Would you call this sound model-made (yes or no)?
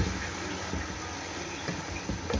no